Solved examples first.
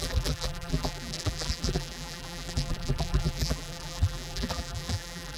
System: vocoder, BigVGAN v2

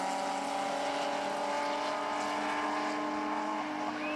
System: none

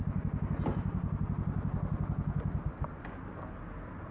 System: none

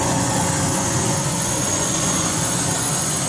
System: vocoder, Vocos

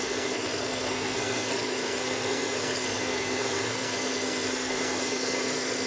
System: codec, SNAC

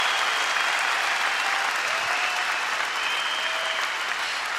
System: none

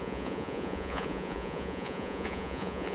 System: vocoder, Vocos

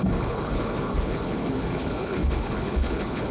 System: codec, HILCodec